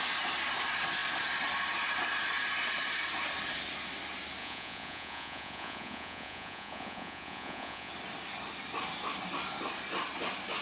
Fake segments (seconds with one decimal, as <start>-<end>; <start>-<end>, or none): 4.4-7.9

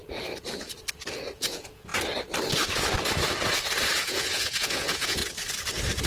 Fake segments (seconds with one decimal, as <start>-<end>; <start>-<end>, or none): 1.4-1.9; 4.0-5.2

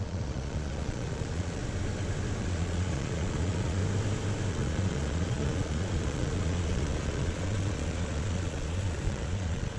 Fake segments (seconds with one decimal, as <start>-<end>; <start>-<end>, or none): 0.0-1.6; 2.4-3.8; 4.5-9.8